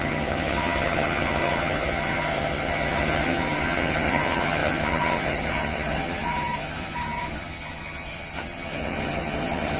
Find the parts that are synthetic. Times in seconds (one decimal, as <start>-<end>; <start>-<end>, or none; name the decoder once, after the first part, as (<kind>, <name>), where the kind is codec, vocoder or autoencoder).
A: 0.0-9.8 (vocoder, HiFi-GAN)